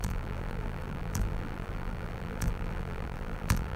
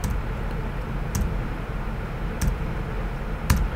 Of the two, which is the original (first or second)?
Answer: second